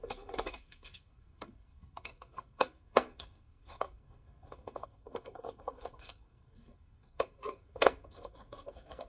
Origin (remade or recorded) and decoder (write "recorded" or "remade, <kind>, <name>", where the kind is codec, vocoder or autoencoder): remade, codec, SNAC